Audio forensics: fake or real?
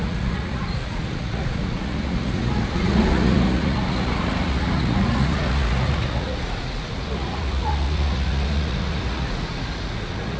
fake